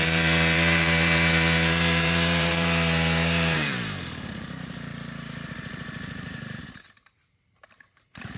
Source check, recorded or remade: remade